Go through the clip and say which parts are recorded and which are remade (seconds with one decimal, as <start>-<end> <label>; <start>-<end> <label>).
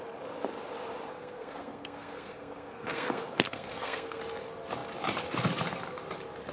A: 0.0-1.1 recorded; 1.1-4.2 remade; 4.2-6.5 recorded